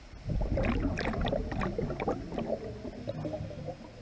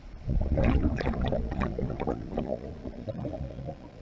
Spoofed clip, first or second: second